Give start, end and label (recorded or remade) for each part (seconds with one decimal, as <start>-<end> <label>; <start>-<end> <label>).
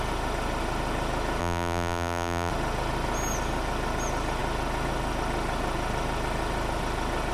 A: 0.0-1.4 recorded; 1.4-2.5 remade; 2.5-7.3 recorded